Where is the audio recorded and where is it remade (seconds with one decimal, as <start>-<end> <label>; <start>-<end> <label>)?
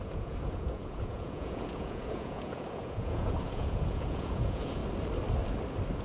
0.0-4.8 remade; 4.8-6.0 recorded